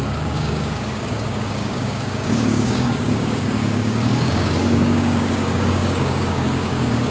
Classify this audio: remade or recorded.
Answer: remade